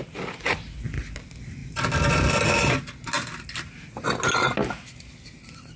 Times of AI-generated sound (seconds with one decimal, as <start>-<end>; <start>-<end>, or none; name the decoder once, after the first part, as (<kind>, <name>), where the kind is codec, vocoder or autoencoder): none